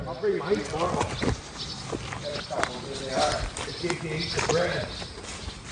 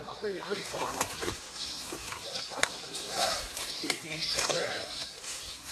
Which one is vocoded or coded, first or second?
second